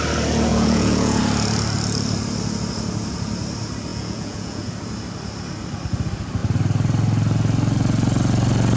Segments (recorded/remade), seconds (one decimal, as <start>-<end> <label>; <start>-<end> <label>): 0.0-0.5 recorded; 0.5-1.2 remade; 1.2-3.9 recorded; 3.9-4.7 remade; 4.7-8.8 recorded